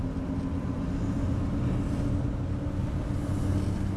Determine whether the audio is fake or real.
real